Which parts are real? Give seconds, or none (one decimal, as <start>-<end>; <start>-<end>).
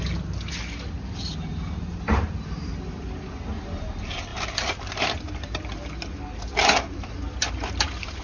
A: 0.0-1.5; 3.0-4.3; 5.0-8.2